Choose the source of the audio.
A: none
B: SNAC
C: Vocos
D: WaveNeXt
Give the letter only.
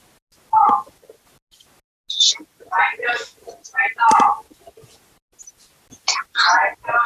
A